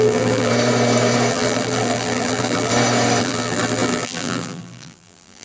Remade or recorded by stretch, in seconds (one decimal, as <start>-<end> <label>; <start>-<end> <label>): 0.0-0.5 remade; 0.5-1.3 recorded; 1.3-2.7 remade; 2.7-3.2 recorded; 3.2-5.4 remade